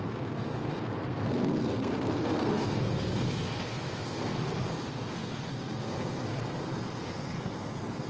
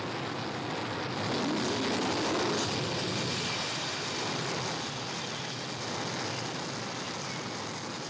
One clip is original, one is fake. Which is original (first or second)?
second